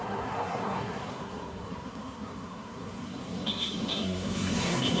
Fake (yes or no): yes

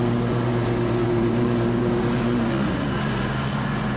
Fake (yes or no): yes